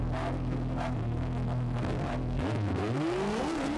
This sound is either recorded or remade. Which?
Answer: remade